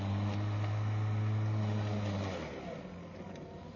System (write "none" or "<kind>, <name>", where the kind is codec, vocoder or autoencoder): none